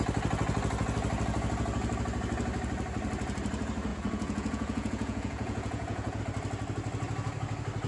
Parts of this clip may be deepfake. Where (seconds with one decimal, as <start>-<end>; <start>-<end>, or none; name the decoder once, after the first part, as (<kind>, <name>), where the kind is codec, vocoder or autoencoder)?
3.9-6.2 (vocoder, Vocos)